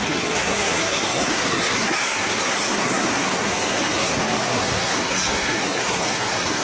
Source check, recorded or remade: remade